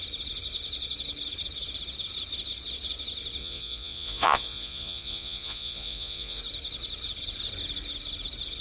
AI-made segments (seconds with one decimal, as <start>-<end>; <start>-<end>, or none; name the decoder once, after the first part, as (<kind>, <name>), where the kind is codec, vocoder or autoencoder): 3.4-6.4 (vocoder, Vocos)